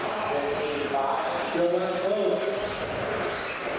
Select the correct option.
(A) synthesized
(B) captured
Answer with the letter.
B